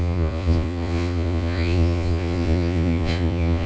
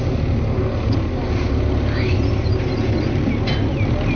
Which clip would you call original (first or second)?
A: second